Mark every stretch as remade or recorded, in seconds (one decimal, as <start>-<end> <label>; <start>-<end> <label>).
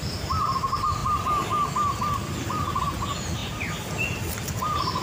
0.0-5.0 recorded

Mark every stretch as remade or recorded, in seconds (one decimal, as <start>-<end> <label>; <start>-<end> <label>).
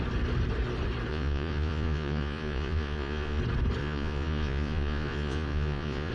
0.0-1.1 recorded; 1.1-3.4 remade; 3.4-3.8 recorded; 3.8-6.1 remade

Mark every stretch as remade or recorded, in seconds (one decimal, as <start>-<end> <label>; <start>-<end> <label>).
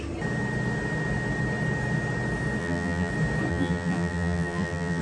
0.0-2.6 recorded; 2.6-3.1 remade; 3.1-3.5 recorded; 3.5-5.0 remade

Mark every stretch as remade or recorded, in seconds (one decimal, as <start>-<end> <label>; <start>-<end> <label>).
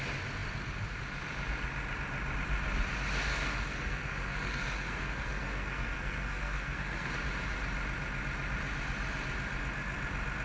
0.0-3.3 recorded; 3.3-7.1 remade; 7.1-10.4 recorded